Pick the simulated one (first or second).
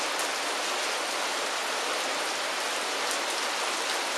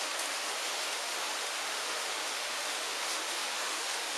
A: second